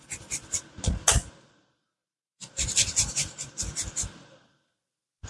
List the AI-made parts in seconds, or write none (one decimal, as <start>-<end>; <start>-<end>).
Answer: 2.0-5.3